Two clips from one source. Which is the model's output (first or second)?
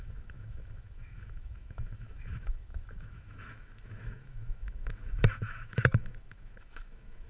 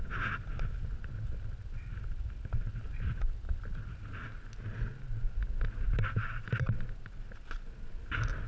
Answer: first